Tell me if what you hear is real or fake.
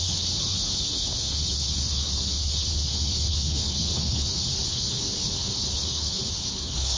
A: fake